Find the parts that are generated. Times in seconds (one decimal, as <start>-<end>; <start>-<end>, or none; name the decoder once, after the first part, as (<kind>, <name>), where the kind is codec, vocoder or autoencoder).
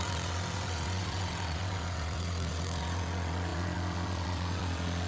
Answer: 0.0-5.1 (vocoder, WaveNeXt)